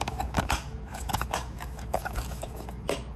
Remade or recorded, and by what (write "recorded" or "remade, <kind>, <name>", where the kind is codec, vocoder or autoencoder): remade, codec, DAC